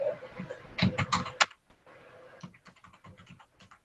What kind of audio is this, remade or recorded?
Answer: recorded